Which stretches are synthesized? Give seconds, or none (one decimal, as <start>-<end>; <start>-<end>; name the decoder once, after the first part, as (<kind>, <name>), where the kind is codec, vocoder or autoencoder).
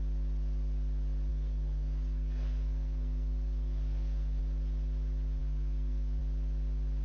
1.3-4.4 (codec, SNAC); 5.4-6.2